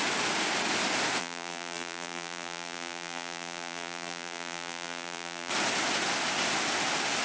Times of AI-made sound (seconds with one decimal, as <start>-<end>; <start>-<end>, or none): 1.2-5.5